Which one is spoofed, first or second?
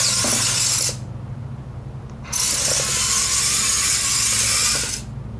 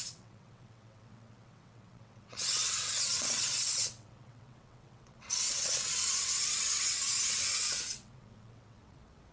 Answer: second